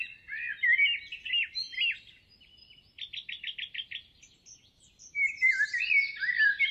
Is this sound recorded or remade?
recorded